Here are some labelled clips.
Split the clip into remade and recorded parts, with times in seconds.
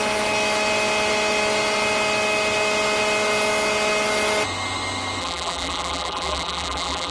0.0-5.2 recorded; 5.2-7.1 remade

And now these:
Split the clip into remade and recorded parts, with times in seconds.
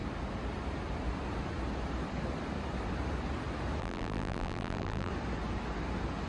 0.0-3.8 recorded; 3.8-5.1 remade; 5.1-6.3 recorded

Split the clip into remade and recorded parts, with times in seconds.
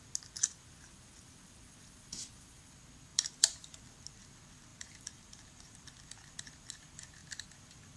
0.0-3.1 recorded; 3.1-3.8 remade; 3.8-4.7 recorded; 4.7-5.9 remade; 5.9-8.0 recorded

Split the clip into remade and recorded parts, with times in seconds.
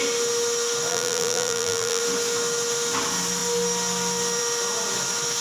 0.0-0.9 recorded; 0.9-2.0 remade; 2.0-5.4 recorded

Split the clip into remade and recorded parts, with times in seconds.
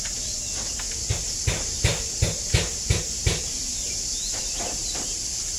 0.0-5.6 recorded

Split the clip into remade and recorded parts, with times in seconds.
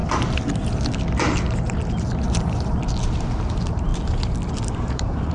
0.0-3.2 recorded; 3.2-3.9 remade; 3.9-4.5 recorded; 4.5-5.3 remade